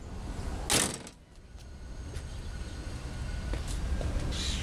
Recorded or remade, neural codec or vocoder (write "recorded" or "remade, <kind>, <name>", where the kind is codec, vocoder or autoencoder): recorded